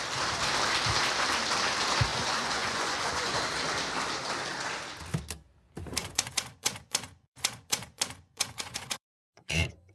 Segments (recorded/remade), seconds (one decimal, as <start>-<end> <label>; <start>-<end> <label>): 0.0-2.1 recorded; 2.1-3.4 remade; 3.4-6.0 recorded; 6.0-9.9 remade